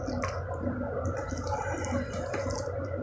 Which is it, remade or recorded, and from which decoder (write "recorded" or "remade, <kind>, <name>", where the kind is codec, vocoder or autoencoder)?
recorded